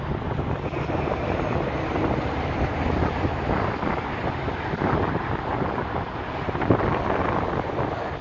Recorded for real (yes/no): yes